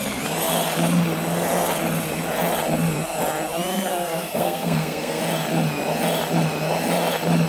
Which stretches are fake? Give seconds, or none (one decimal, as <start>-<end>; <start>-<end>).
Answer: 3.9-5.2